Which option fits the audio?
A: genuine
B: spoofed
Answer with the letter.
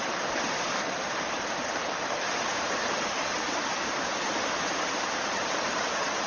B